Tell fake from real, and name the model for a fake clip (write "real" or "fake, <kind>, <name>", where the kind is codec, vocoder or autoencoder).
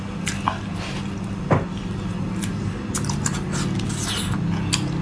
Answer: real